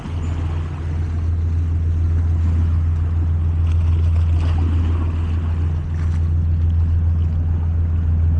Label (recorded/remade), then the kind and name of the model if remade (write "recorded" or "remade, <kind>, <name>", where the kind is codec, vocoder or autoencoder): recorded